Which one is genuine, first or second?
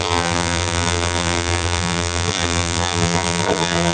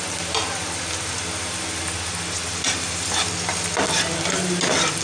second